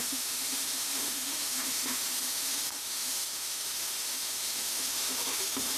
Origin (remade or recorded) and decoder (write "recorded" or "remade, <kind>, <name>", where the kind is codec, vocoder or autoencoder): remade, autoencoder, DAC-VAE